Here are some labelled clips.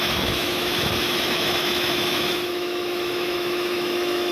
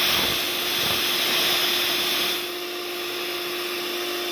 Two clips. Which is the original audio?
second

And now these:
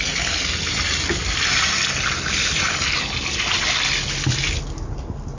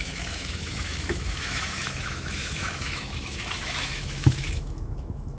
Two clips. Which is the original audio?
first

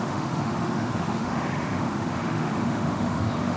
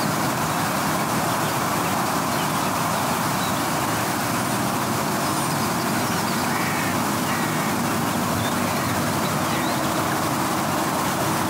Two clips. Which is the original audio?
second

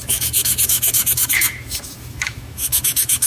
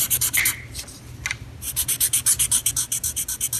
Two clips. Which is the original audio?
second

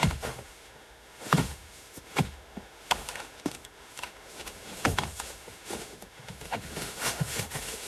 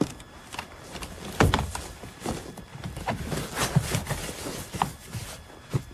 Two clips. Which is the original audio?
second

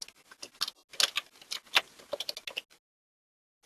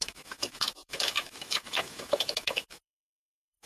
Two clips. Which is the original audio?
first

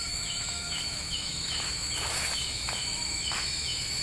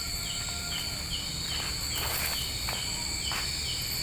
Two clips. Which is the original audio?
second